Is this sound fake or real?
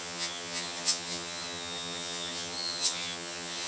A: fake